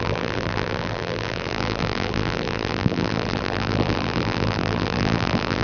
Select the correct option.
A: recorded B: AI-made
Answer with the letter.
B